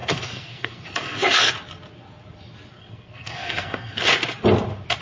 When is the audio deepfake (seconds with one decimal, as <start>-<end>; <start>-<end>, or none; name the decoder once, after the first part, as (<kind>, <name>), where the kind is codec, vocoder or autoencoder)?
0.0-1.5 (codec, SNAC); 2.8-4.0